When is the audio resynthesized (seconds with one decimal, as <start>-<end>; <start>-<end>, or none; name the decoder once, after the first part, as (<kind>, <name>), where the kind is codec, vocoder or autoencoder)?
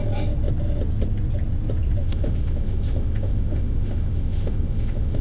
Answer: 2.0-5.2 (autoencoder, DAC-VAE)